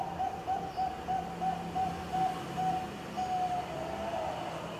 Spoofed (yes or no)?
no